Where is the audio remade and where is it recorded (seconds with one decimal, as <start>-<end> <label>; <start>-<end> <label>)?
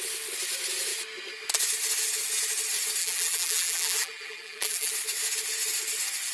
0.0-3.0 recorded; 3.0-4.9 remade; 4.9-6.3 recorded